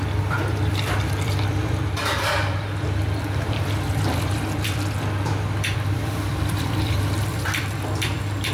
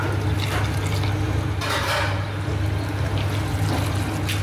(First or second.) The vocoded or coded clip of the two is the first